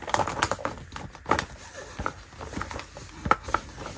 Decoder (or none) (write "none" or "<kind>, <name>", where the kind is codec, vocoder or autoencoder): none